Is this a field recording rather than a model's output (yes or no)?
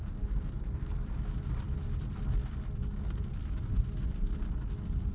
yes